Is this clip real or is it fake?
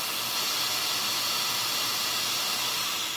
real